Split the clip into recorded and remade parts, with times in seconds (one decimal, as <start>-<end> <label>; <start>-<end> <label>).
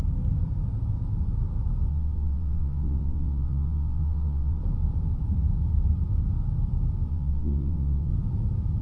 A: 0.0-1.9 recorded; 1.9-4.6 remade; 4.6-7.1 recorded; 7.1-8.1 remade; 8.1-8.8 recorded